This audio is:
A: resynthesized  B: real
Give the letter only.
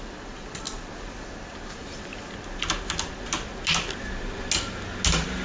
B